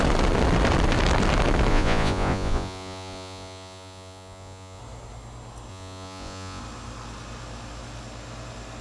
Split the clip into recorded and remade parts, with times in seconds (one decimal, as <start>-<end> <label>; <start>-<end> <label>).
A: 0.0-1.7 recorded; 1.7-4.8 remade; 4.8-5.7 recorded; 5.7-6.6 remade; 6.6-8.8 recorded